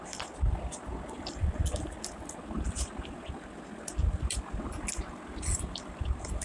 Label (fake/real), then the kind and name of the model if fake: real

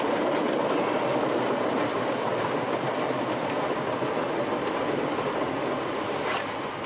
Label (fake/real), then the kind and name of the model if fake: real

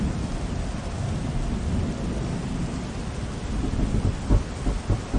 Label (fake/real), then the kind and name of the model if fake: real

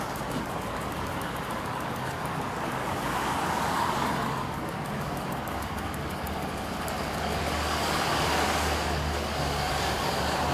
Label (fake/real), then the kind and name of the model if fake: fake, codec, DAC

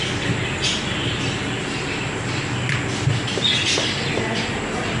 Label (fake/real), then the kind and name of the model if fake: real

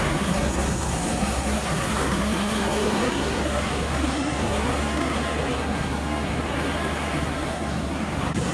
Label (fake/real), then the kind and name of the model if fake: fake, codec, SNAC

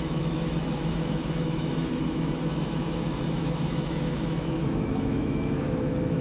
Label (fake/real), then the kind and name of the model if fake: fake, autoencoder, DAC-VAE